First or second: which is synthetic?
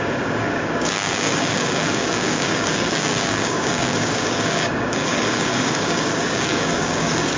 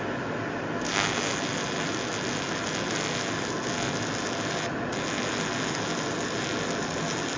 first